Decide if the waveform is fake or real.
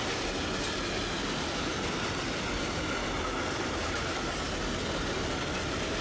real